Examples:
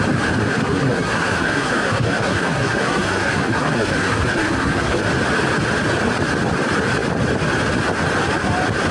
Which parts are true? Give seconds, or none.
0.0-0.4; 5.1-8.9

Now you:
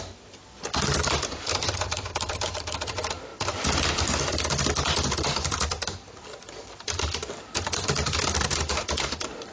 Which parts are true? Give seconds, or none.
0.4-1.1; 3.3-6.4

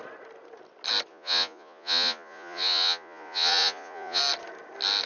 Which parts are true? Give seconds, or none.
0.0-1.1; 4.2-5.1

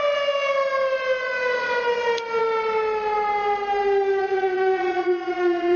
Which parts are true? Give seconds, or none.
0.0-4.2

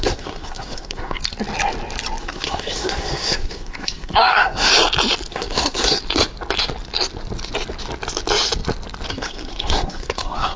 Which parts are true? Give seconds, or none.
1.2-2.2; 4.7-5.3; 6.0-9.1

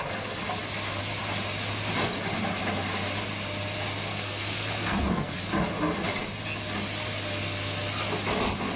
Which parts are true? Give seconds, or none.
0.0-4.1; 5.3-8.8

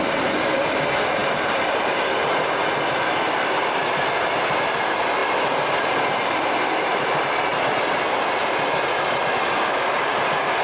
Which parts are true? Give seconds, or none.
0.0-10.6

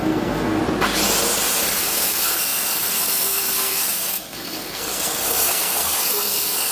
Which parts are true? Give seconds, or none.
0.6-1.8